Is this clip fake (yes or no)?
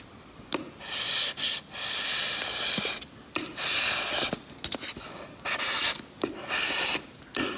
no